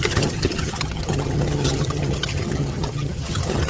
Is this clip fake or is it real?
fake